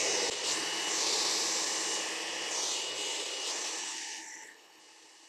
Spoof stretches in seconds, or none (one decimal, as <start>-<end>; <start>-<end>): 3.8-4.8